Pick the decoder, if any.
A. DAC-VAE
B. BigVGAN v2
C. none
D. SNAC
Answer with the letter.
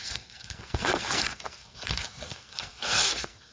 D